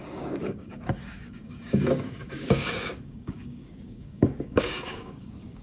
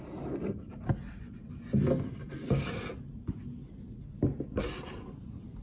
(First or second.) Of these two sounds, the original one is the second